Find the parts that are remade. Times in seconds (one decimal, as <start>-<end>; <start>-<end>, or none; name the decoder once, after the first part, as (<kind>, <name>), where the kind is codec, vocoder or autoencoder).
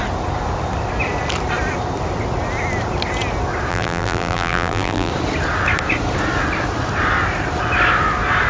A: 3.7-5.1 (vocoder, BigVGAN v2)